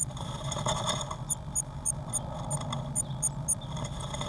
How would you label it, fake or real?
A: real